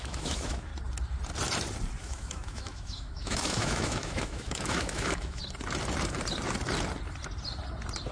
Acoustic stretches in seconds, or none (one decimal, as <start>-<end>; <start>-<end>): 0.7-2.0; 5.4-8.1